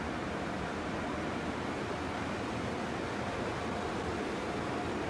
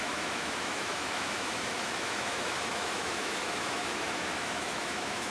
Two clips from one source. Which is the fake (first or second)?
second